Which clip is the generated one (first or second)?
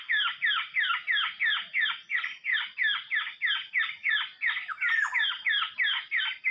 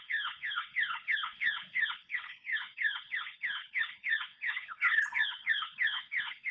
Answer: second